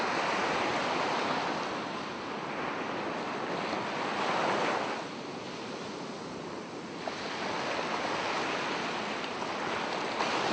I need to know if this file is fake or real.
real